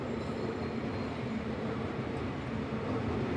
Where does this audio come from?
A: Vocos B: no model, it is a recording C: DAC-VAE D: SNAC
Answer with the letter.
B